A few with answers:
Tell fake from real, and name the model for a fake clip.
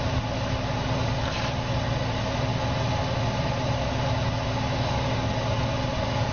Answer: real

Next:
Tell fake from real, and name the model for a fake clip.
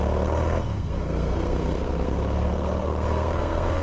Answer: fake, codec, SNAC